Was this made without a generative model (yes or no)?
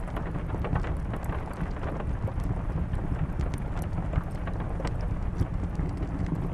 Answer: yes